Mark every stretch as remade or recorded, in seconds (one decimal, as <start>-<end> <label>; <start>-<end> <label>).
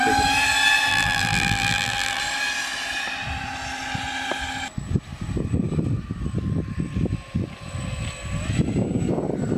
0.0-0.9 recorded; 0.9-2.2 remade; 2.2-9.6 recorded